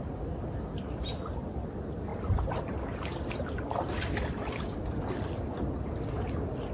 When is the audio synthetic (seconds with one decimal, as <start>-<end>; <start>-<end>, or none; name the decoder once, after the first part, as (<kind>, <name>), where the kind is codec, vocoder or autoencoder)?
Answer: none

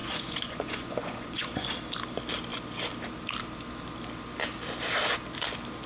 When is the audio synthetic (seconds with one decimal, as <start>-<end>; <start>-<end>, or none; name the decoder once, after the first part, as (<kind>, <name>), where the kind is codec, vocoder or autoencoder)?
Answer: 0.0-1.7 (vocoder, Vocos)

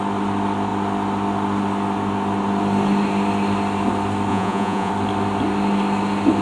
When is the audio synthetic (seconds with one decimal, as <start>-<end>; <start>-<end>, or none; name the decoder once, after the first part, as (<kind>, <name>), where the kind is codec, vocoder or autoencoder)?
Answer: 4.3-4.9 (vocoder, Vocos)

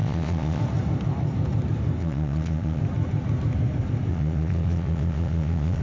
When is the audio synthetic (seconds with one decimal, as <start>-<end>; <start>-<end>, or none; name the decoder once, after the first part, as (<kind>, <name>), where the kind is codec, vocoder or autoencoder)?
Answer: 0.0-0.6 (vocoder, Vocos); 2.0-2.8; 4.1-5.8